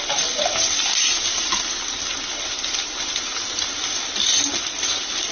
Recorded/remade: recorded